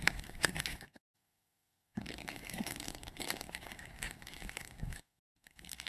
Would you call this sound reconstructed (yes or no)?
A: yes